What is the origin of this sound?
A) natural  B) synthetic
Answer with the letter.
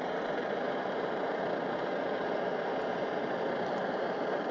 A